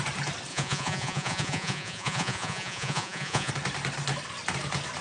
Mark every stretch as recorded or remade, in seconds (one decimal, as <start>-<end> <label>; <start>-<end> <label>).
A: 0.0-0.5 recorded; 0.5-3.5 remade; 3.5-5.0 recorded